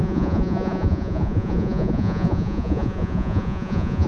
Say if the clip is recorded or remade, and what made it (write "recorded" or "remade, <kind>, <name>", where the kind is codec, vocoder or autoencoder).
remade, vocoder, Vocos